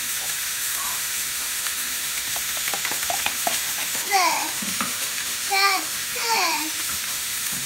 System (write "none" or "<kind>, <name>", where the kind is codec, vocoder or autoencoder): autoencoder, DAC-VAE